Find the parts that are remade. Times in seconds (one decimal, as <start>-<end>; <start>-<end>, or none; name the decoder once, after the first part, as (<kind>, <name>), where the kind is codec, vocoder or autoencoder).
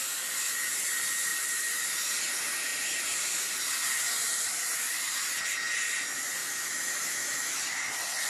6.4-7.6 (autoencoder, DAC-VAE)